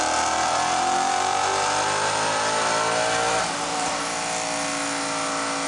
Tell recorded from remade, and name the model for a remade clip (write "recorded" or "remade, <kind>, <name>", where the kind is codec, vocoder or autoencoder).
recorded